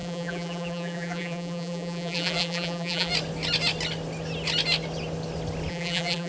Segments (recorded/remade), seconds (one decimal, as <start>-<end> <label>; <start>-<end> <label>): 0.0-3.1 remade; 3.1-5.7 recorded; 5.7-6.3 remade